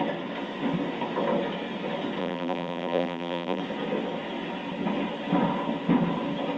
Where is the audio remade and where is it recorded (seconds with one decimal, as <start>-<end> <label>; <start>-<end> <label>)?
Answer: 0.0-2.2 recorded; 2.2-3.6 remade; 3.6-6.6 recorded